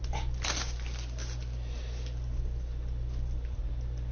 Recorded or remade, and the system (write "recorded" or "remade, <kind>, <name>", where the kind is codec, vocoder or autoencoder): recorded